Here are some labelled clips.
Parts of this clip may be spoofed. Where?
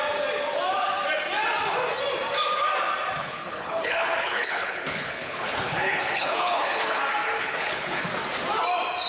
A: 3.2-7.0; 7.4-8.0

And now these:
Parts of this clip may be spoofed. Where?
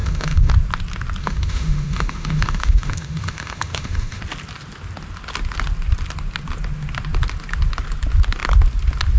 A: 0.0-0.5; 1.2-4.2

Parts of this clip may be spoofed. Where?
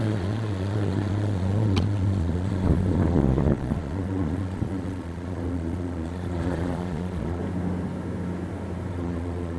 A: 0.0-7.4; 8.9-9.6